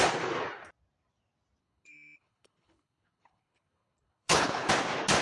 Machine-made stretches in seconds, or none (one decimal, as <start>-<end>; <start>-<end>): 1.6-4.7